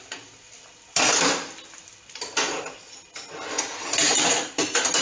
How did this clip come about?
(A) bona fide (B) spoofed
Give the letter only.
A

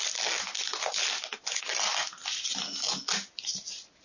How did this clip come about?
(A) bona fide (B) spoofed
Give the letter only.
A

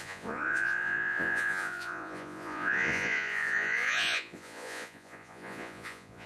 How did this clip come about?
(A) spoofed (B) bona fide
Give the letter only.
A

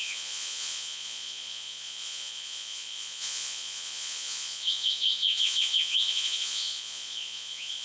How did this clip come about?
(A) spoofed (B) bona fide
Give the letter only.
A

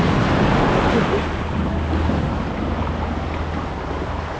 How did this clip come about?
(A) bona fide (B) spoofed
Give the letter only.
A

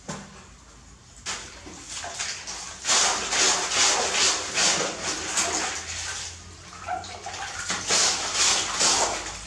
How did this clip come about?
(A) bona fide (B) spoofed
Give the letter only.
A